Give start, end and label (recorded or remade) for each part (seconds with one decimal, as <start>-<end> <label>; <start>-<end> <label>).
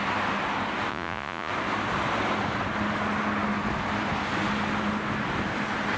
0.0-0.9 recorded; 0.9-1.5 remade; 1.5-6.0 recorded